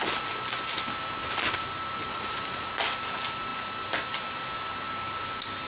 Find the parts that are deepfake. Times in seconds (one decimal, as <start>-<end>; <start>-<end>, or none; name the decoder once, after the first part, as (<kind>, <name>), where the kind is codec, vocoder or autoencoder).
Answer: 2.1-2.7 (vocoder, Vocos)